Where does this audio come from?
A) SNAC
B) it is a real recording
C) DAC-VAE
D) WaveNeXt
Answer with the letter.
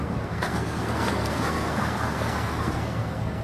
A